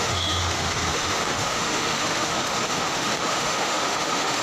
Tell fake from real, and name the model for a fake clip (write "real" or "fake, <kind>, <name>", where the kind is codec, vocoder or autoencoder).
fake, autoencoder, DAC-VAE